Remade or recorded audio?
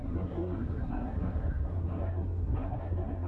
remade